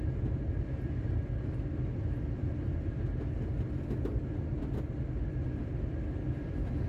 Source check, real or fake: real